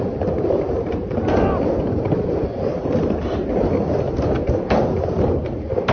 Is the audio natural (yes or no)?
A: yes